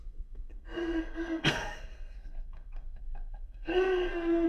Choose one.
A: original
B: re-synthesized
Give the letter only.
B